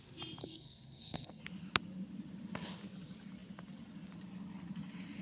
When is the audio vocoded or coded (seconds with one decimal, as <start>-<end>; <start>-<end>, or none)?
0.4-1.4